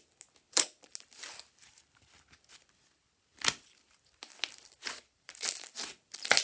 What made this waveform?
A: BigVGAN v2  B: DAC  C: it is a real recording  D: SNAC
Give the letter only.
C